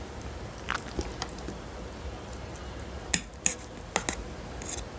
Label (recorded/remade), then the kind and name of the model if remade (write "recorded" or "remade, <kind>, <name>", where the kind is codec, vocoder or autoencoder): recorded